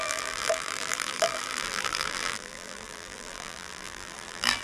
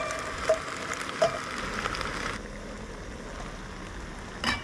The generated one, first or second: first